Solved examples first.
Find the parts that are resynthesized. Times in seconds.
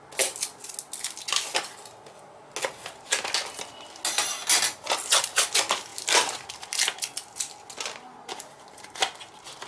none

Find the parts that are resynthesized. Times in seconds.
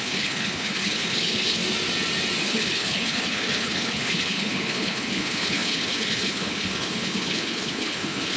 0.0-1.6 (codec, HILCodec); 2.4-8.4